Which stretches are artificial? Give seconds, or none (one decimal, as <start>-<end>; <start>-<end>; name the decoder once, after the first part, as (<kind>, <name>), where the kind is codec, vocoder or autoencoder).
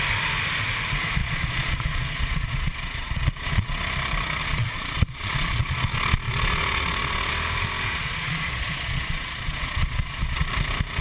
1.2-3.9 (vocoder, Vocos); 4.4-7.3; 7.9-10.5